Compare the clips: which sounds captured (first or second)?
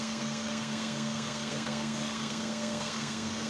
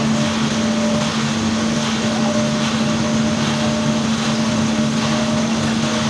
second